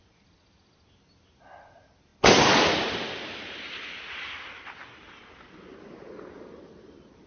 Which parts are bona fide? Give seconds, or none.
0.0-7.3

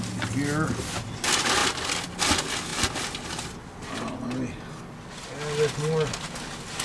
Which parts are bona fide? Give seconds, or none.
0.0-6.8

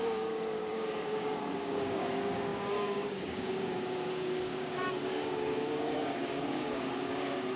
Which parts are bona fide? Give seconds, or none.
none

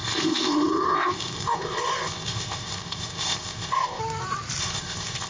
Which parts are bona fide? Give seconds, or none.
4.0-4.6

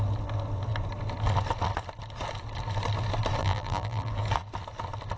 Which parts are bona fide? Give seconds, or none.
0.0-3.4; 4.1-5.2

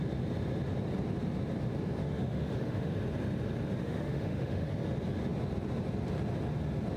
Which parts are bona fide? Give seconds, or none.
0.0-2.0; 2.9-3.8; 4.7-7.0

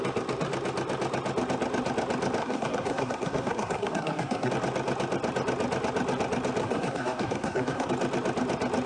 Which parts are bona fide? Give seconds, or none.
0.0-2.4; 4.5-6.6; 7.9-8.9